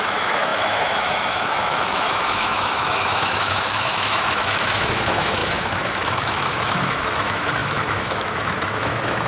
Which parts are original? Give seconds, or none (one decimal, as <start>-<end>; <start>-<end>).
none